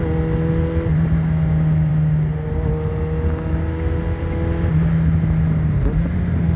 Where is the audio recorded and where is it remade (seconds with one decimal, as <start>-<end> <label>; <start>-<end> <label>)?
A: 0.0-6.6 recorded